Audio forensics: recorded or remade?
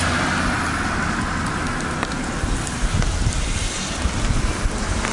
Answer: recorded